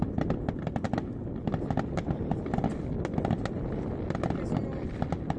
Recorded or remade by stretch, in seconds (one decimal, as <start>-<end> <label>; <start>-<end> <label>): 0.0-5.4 recorded